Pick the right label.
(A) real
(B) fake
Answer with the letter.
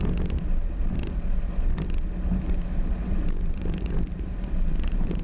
A